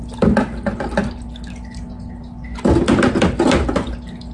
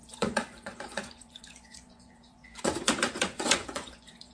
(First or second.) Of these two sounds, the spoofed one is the second